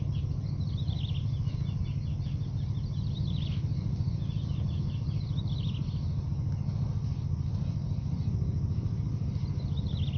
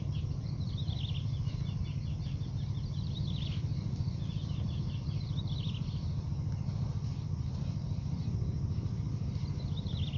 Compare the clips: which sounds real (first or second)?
first